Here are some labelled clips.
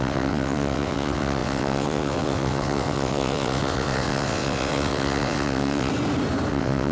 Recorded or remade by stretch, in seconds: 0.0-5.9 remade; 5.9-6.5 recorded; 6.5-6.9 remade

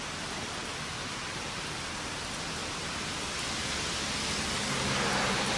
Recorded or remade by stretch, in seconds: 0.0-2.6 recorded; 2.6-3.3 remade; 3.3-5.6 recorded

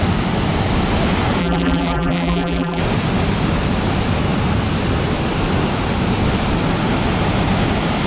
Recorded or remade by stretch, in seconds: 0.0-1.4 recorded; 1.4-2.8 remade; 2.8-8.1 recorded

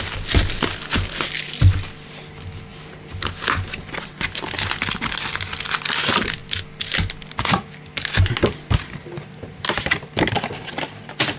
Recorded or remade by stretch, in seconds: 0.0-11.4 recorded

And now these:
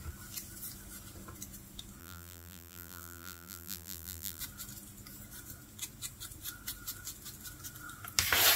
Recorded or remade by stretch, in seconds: 0.0-2.0 recorded; 2.0-4.4 remade; 4.4-8.6 recorded